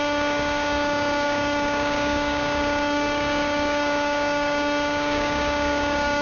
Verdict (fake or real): fake